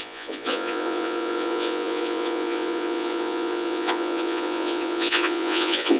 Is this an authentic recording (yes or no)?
no